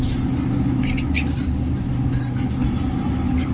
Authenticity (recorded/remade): recorded